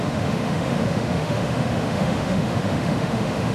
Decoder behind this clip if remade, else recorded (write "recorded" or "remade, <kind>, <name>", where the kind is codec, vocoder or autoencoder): remade, autoencoder, DAC-VAE